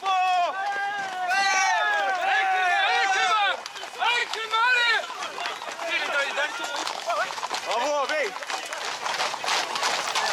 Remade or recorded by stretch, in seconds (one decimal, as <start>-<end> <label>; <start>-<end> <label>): 0.0-0.6 recorded; 0.6-1.6 remade; 1.6-4.2 recorded; 4.2-5.2 remade; 5.2-6.8 recorded; 6.8-7.4 remade; 7.4-10.3 recorded